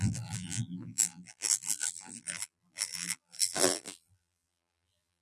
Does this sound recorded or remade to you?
remade